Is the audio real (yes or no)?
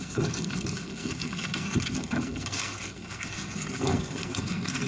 no